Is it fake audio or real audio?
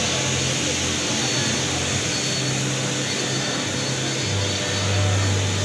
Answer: real